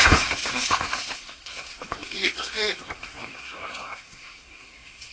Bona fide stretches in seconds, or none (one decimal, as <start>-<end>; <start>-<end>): none